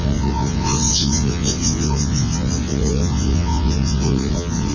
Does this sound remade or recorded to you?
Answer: remade